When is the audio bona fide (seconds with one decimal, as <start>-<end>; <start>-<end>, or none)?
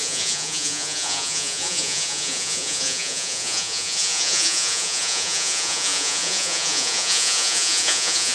none